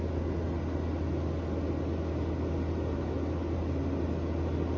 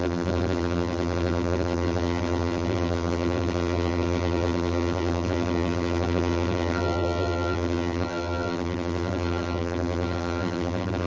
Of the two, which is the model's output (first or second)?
second